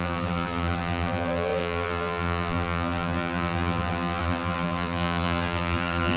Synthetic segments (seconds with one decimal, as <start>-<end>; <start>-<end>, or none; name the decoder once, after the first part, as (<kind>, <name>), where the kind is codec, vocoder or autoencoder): 0.0-6.2 (vocoder, BigVGAN v2)

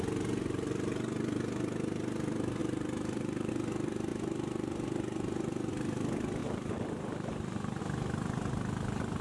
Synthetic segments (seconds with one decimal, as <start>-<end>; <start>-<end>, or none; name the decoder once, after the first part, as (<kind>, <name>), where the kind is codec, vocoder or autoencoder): 2.6-3.5 (vocoder, BigVGAN v2); 6.4-7.8

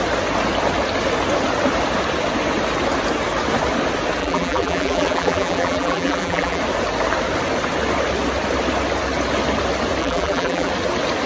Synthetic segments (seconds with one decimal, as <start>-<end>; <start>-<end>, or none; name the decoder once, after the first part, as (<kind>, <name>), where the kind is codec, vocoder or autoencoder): 4.2-6.6 (vocoder, BigVGAN v2); 10.0-10.7

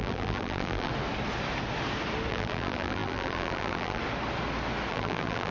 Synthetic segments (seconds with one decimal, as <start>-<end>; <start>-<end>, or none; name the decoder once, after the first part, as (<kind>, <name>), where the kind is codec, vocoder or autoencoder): 0.0-0.9 (vocoder, BigVGAN v2); 2.3-4.0; 4.9-5.5